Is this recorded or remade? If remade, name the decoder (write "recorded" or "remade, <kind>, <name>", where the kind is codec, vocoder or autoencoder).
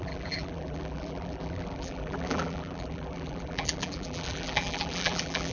remade, vocoder, BigVGAN v2